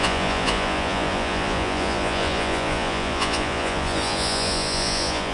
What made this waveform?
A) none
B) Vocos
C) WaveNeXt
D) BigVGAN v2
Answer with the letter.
B